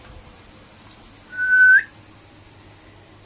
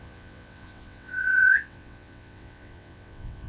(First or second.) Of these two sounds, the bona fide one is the first